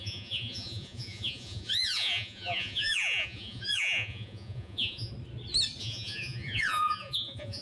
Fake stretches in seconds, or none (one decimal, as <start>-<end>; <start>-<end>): 0.0-5.1; 5.8-7.6